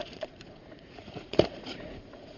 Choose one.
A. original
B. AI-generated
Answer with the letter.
B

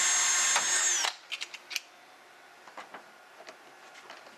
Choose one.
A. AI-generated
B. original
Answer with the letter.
B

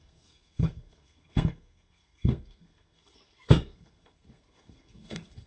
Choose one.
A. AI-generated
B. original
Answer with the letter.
A